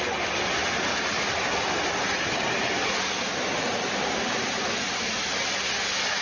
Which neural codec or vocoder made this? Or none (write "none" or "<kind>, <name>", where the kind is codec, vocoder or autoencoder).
none